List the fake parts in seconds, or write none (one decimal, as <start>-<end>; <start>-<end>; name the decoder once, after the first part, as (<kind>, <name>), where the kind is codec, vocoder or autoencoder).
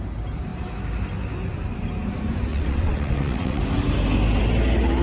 2.5-3.6 (vocoder, WaveNeXt)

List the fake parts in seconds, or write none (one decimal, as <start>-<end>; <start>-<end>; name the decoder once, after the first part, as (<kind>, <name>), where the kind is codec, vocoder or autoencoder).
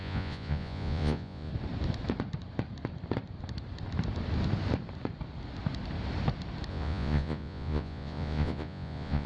0.0-1.5 (vocoder, Vocos); 6.7-9.3